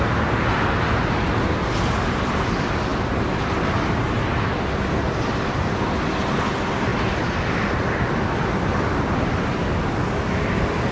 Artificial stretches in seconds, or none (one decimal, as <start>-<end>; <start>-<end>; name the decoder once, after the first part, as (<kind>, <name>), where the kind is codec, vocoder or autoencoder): none